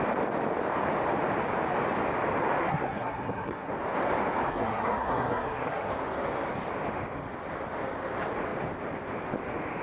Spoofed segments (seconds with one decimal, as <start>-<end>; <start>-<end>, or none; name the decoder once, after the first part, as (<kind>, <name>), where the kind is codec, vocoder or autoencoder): 2.6-3.7 (codec, SNAC); 4.5-5.9